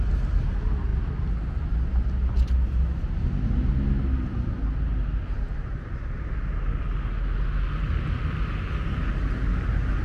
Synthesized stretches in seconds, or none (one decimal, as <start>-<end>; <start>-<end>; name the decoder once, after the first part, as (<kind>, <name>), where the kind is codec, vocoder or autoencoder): none